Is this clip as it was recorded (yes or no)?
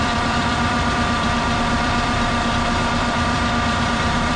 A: no